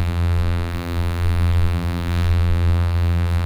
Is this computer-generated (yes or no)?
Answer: yes